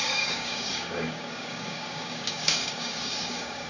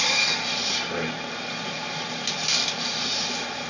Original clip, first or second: second